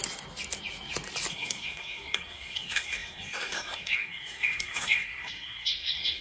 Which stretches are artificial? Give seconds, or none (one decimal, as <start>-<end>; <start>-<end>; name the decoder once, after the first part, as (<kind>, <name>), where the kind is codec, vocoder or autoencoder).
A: 1.3-6.2 (codec, SNAC)